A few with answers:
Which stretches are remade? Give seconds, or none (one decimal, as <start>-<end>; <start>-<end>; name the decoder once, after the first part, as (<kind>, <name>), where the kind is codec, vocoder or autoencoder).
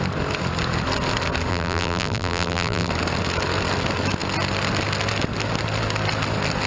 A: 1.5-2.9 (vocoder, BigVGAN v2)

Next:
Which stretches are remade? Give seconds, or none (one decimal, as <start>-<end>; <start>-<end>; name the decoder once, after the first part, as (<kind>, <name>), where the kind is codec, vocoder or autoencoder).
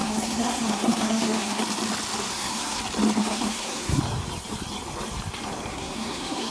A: 0.0-1.6 (codec, SNAC); 2.3-2.8; 3.2-4.0; 5.7-6.5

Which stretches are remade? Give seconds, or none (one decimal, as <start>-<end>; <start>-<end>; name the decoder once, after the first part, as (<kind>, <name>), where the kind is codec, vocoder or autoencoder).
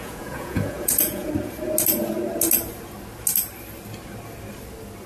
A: 0.0-1.3 (vocoder, Vocos)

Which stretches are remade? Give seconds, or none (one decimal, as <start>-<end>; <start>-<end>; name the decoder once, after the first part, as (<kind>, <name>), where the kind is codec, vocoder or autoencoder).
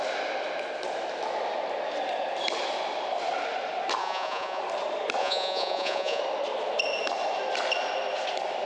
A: 4.0-4.6 (vocoder, Vocos); 5.2-6.2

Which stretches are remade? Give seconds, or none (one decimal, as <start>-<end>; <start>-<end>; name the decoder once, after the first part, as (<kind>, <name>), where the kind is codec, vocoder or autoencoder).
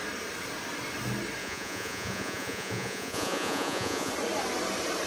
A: 1.4-4.1 (vocoder, Vocos)